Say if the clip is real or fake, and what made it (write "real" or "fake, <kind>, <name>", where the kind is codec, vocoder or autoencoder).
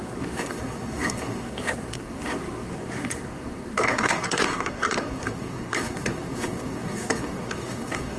fake, codec, SNAC